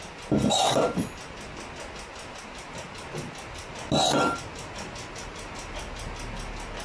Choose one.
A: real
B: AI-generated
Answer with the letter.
A